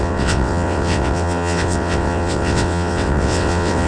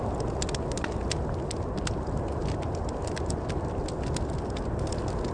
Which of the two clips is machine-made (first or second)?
first